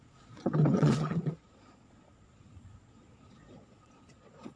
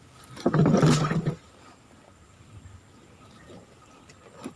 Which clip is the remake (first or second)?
first